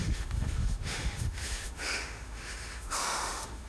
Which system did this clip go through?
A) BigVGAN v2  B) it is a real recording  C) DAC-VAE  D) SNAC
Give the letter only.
C